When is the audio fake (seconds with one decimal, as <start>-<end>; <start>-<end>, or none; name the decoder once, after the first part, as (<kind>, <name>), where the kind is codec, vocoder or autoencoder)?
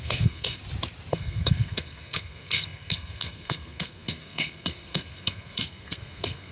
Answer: 0.0-0.6 (codec, SNAC); 1.1-6.5